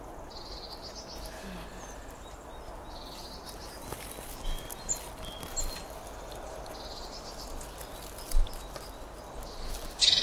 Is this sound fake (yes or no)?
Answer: no